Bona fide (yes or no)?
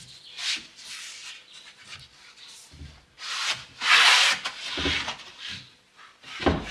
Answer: yes